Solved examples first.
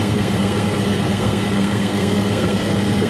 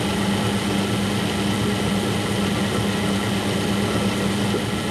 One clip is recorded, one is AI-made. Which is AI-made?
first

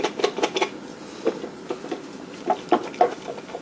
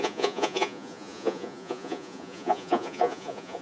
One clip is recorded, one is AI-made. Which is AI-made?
second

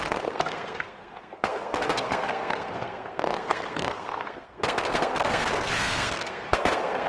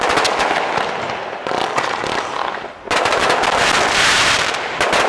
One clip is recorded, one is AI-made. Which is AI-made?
first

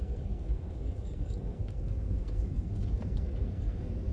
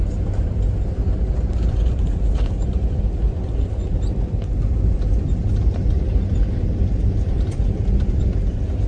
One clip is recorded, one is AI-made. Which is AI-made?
first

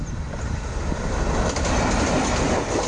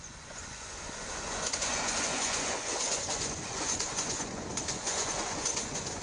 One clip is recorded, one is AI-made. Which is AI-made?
second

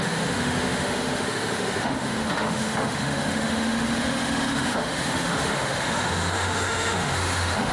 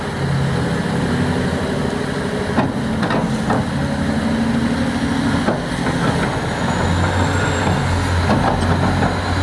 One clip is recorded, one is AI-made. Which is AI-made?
first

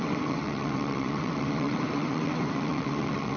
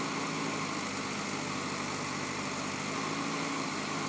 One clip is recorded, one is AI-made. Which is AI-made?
first